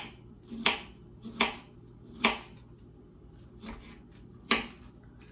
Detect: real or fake real